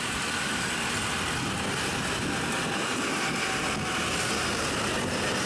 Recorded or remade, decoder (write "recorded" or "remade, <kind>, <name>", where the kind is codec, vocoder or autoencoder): recorded